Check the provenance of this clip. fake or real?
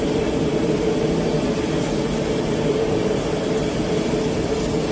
fake